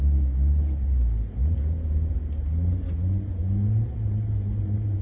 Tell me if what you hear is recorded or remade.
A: recorded